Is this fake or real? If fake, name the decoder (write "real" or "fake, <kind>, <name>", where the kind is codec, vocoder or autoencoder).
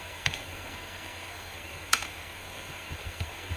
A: fake, codec, SNAC